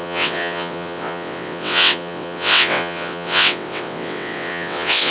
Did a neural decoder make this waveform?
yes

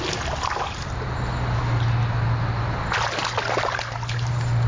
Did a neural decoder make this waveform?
no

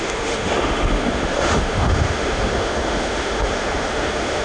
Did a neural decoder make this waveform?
yes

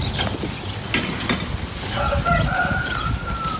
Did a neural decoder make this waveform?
no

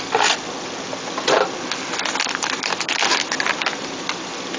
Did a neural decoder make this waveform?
no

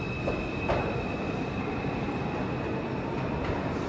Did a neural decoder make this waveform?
no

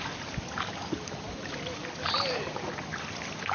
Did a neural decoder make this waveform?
no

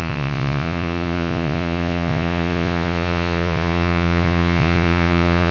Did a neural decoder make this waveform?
yes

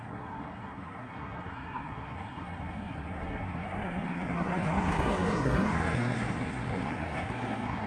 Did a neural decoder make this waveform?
yes